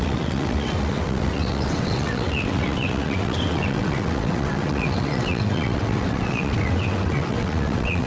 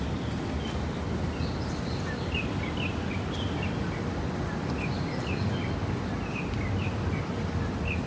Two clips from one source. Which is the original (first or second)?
second